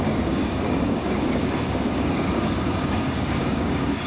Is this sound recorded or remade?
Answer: remade